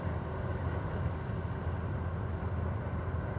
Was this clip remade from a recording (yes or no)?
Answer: no